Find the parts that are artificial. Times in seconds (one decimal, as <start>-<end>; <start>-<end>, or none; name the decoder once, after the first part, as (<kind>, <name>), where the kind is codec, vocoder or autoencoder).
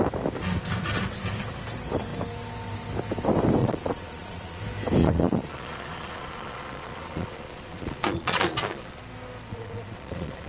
3.6-4.6 (vocoder, Vocos); 5.0-9.0; 9.5-10.5